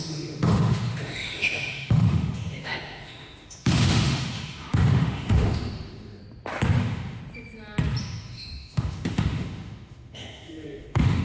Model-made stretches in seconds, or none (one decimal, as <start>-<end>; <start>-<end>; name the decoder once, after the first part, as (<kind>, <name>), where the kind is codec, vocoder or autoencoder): 0.0-6.2 (autoencoder, DAC-VAE); 6.8-7.2; 8.0-11.2